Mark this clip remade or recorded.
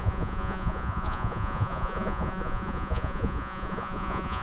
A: remade